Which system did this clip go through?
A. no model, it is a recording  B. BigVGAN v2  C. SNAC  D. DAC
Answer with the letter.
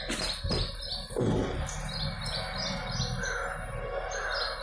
A